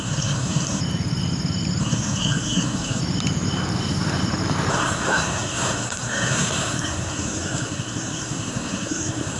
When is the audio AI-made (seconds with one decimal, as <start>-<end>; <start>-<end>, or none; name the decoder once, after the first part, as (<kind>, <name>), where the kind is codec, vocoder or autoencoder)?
0.0-0.8 (codec, SNAC); 1.8-3.0; 4.7-9.4